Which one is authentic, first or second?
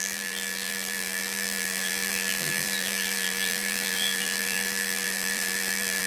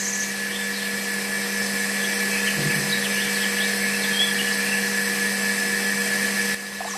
second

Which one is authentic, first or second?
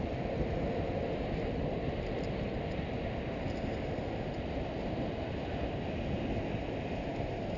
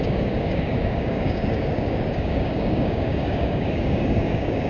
first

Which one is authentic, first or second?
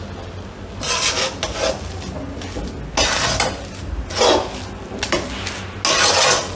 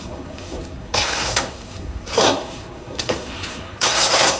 first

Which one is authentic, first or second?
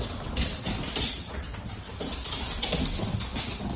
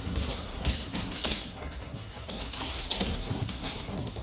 first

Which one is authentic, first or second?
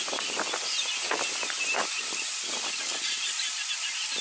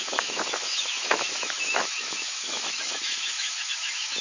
first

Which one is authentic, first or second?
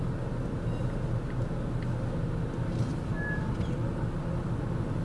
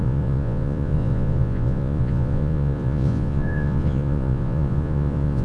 first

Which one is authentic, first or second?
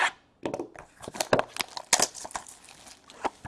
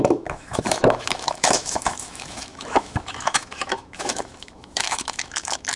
first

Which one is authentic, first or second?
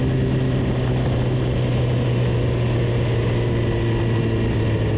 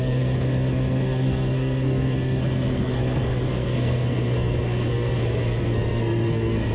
first